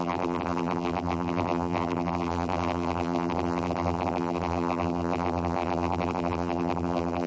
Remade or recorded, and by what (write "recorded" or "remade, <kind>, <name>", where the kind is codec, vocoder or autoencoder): remade, vocoder, BigVGAN v2